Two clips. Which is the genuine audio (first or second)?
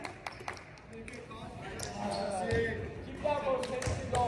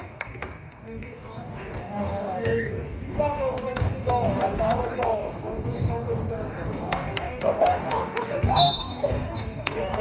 first